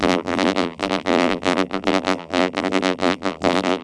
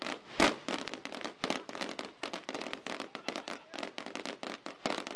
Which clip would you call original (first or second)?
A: second